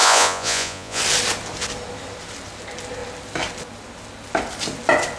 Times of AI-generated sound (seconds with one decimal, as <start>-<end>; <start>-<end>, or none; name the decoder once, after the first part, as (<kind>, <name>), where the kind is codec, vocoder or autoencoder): 0.0-1.0 (vocoder, Vocos)